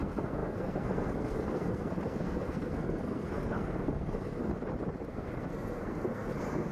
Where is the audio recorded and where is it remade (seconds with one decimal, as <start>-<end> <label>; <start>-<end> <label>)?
0.0-4.5 remade; 4.5-5.1 recorded; 5.1-6.7 remade